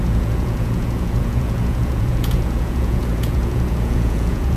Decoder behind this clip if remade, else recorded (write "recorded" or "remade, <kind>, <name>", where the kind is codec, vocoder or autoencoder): remade, vocoder, Vocos